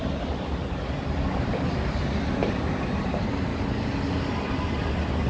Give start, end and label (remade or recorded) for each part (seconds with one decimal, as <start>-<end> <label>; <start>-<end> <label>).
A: 0.0-5.3 recorded